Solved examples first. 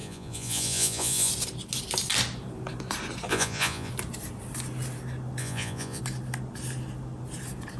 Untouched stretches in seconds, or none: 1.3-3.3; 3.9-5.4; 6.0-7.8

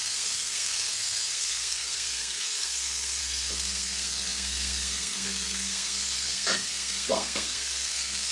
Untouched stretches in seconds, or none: none